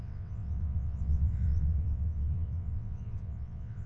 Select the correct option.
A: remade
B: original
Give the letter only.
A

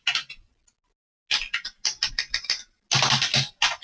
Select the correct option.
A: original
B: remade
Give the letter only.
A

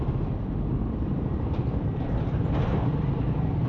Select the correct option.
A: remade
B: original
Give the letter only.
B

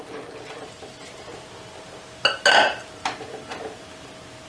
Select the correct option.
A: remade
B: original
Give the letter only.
B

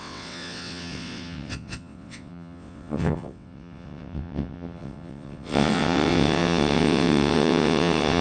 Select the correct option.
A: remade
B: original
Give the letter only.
A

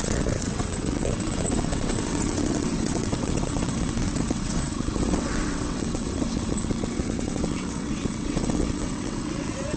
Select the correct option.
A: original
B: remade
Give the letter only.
B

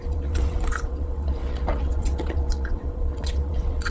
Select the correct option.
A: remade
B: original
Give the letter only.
A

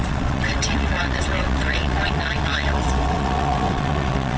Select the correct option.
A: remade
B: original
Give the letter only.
A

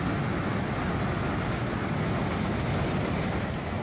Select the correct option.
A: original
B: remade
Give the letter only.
A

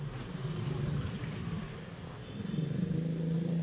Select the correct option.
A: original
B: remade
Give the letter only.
A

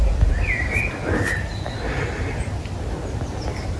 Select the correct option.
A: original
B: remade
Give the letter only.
A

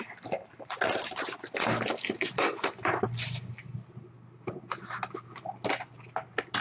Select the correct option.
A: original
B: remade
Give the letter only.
A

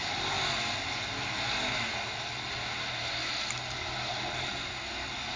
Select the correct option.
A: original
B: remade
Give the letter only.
A